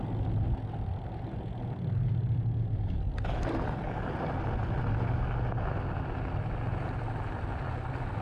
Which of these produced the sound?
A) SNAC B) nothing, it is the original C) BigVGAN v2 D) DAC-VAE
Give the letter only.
B